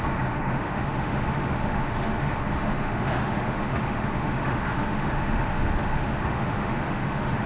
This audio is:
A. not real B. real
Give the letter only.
A